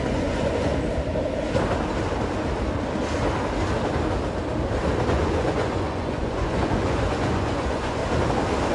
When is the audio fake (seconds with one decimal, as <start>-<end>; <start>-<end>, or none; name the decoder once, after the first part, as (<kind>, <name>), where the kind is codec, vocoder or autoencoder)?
0.0-0.7 (vocoder, Vocos); 5.1-8.0